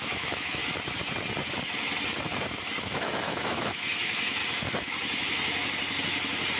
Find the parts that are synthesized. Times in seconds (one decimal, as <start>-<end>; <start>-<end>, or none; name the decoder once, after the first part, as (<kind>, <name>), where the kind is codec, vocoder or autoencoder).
0.0-0.6 (autoencoder, DAC-VAE); 2.8-4.4